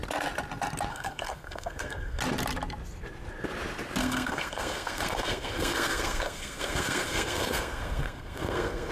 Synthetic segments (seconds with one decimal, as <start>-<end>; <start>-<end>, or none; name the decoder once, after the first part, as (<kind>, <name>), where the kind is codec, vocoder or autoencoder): 0.9-2.2 (codec, SNAC); 4.0-8.9